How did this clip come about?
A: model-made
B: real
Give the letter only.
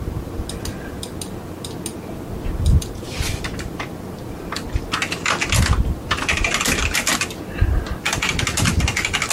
B